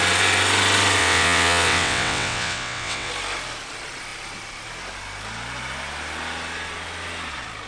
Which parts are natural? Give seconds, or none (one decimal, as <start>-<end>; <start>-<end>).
0.0-1.0; 3.1-7.7